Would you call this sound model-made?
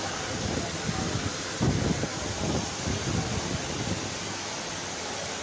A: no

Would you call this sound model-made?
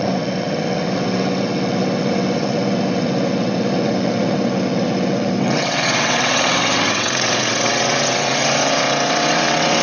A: yes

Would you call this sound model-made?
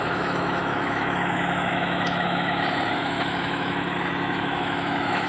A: yes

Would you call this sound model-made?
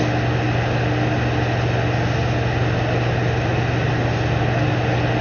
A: no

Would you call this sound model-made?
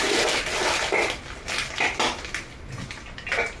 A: no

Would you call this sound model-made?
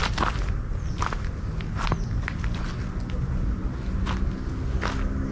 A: no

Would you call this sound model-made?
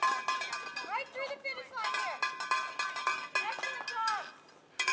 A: no